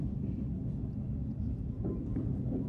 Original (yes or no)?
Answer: yes